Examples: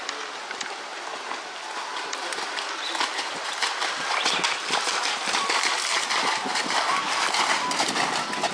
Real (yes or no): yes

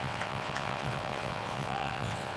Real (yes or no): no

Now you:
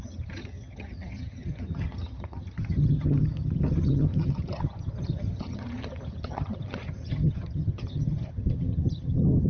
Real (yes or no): no